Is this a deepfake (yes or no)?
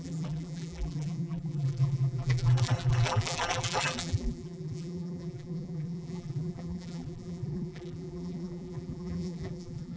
yes